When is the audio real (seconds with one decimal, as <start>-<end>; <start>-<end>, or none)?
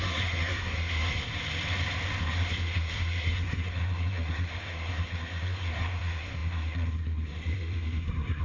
1.3-2.2